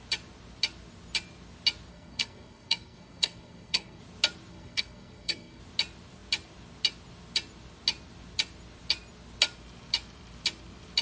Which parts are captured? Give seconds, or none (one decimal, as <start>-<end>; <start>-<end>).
0.0-1.9; 4.0-4.5; 5.6-11.0